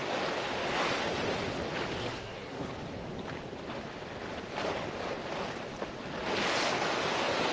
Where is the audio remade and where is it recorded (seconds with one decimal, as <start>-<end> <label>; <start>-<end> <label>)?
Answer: 0.0-2.0 recorded; 2.0-2.7 remade; 2.7-7.5 recorded

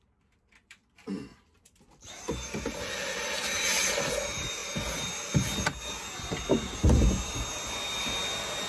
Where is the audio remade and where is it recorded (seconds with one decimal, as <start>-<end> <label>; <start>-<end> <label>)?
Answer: 0.0-1.3 recorded; 1.3-4.1 remade; 4.1-8.7 recorded

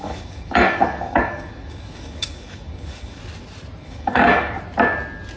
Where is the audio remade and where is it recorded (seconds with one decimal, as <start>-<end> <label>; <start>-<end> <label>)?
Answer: 0.0-3.2 remade; 3.2-3.8 recorded; 3.8-4.6 remade; 4.6-5.4 recorded

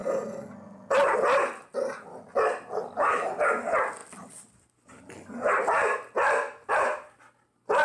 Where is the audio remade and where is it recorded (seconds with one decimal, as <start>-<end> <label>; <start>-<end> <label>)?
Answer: 0.0-7.8 recorded

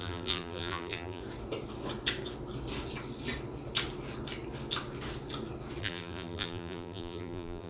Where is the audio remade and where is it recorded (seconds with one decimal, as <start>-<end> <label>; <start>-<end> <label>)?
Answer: 0.0-1.2 remade; 1.2-5.8 recorded; 5.8-7.7 remade

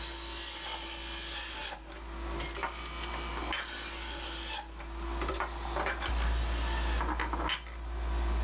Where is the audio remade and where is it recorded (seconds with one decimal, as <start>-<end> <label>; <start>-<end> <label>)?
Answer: 0.0-8.4 recorded

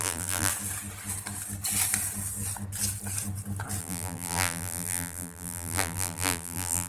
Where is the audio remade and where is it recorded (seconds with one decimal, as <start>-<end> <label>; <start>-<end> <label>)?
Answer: 0.0-0.5 remade; 0.5-3.8 recorded; 3.8-6.9 remade

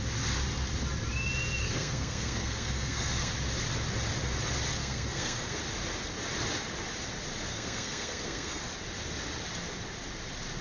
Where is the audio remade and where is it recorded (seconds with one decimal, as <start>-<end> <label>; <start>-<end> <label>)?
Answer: 0.0-1.6 recorded; 1.6-3.3 remade; 3.3-4.8 recorded; 4.8-5.6 remade; 5.6-7.5 recorded; 7.5-8.6 remade; 8.6-10.6 recorded